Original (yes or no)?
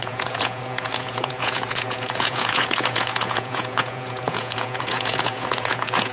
no